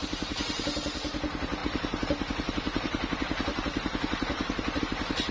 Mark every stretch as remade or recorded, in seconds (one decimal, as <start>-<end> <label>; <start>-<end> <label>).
0.0-0.9 remade; 0.9-1.6 recorded; 1.6-4.8 remade; 4.8-5.3 recorded